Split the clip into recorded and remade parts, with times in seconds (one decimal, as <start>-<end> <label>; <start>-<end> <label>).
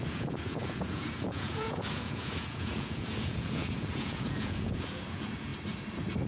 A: 0.0-5.5 remade; 5.5-6.3 recorded